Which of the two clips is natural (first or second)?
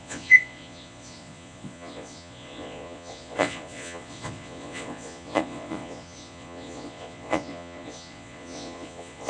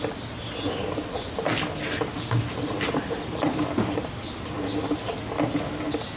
second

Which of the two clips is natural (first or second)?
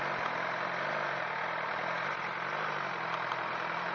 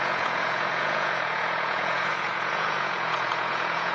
first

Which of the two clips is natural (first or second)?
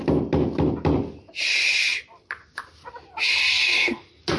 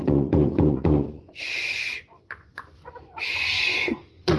first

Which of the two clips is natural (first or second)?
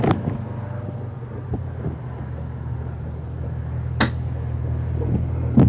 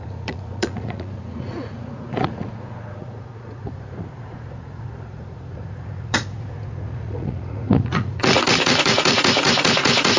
first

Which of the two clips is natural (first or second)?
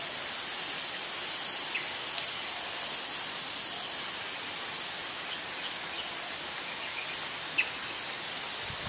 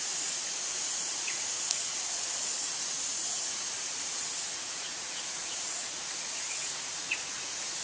first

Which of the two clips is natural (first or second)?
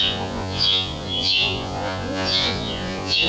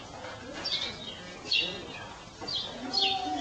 second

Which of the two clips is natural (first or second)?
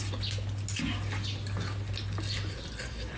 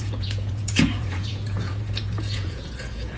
first